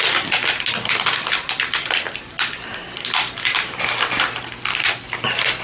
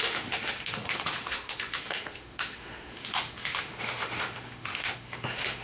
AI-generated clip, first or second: second